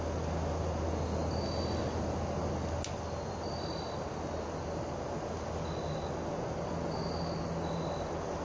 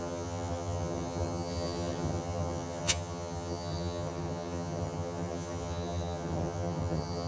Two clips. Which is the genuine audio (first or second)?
first